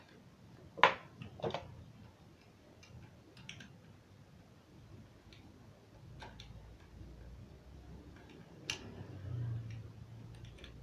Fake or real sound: real